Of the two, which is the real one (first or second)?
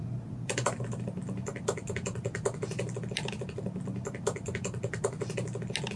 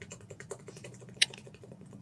first